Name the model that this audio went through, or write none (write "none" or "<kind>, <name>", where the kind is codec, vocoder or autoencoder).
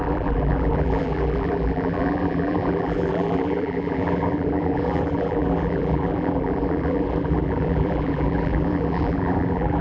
vocoder, BigVGAN v2